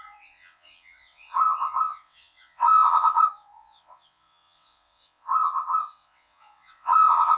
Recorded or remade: remade